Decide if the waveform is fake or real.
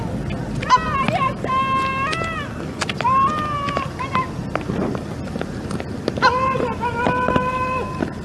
real